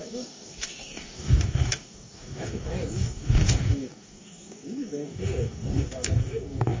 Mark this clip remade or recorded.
remade